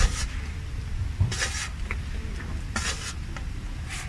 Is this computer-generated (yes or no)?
no